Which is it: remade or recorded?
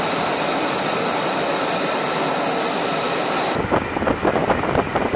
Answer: recorded